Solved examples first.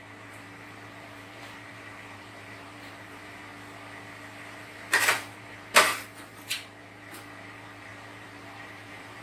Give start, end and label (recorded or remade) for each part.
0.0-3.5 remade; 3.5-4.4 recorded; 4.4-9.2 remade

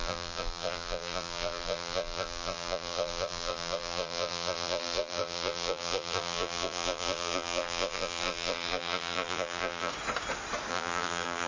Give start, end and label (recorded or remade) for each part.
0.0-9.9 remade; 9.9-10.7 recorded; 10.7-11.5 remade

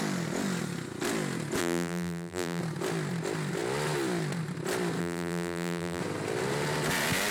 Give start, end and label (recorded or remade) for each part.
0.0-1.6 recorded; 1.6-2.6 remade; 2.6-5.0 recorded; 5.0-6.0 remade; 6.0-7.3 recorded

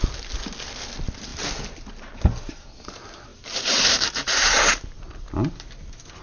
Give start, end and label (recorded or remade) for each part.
0.0-3.3 recorded; 3.3-4.6 remade; 4.6-6.2 recorded

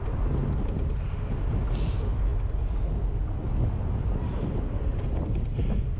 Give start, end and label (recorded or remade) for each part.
0.0-4.9 recorded; 4.9-5.6 remade; 5.6-6.0 recorded

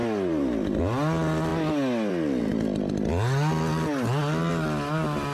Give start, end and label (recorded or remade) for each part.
0.0-0.8 remade; 0.8-5.3 recorded

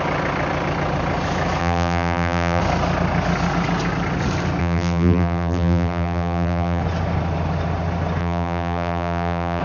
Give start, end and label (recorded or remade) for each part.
0.0-1.6 recorded; 1.6-2.6 remade; 2.6-4.6 recorded; 4.6-6.8 remade; 6.8-8.2 recorded; 8.2-9.6 remade